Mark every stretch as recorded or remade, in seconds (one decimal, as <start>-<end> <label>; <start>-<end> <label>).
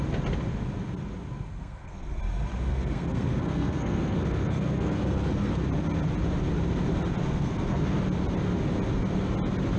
0.0-1.5 recorded; 1.5-2.2 remade; 2.2-2.7 recorded; 2.7-5.5 remade; 5.5-7.2 recorded; 7.2-8.0 remade; 8.0-9.8 recorded